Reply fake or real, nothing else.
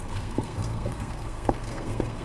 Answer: fake